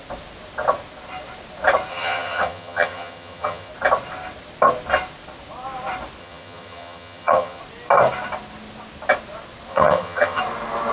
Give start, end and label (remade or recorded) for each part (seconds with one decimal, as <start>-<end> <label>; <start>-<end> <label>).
0.0-1.9 recorded; 1.9-3.7 remade; 3.7-6.2 recorded; 6.2-7.6 remade; 7.6-9.7 recorded; 9.7-10.4 remade; 10.4-10.9 recorded